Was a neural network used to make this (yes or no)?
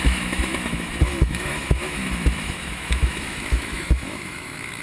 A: yes